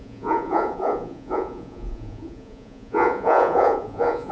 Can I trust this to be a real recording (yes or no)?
no